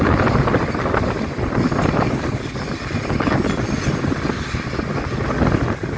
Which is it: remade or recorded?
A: recorded